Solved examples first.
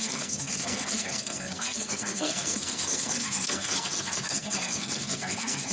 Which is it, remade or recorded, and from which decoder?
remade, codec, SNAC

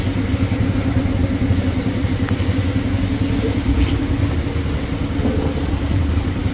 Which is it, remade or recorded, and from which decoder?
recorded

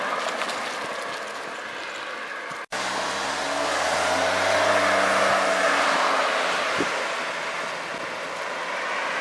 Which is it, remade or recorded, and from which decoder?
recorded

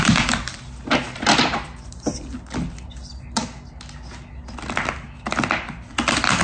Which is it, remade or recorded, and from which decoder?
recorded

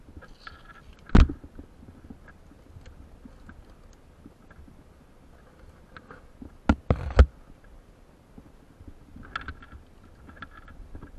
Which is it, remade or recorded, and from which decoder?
recorded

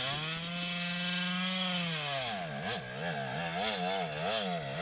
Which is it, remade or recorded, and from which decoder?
recorded